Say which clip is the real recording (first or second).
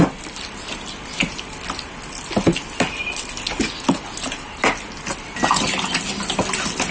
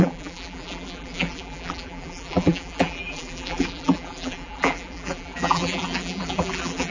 first